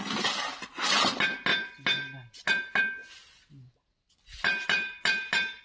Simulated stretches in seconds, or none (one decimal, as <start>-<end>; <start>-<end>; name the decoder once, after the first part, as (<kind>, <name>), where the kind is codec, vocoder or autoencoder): none